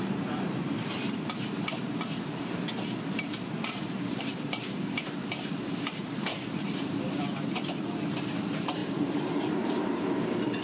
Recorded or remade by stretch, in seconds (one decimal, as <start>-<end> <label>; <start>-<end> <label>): 0.0-10.6 remade